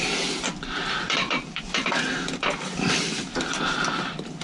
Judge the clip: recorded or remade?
remade